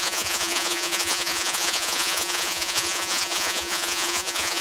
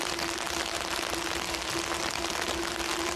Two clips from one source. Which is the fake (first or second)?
first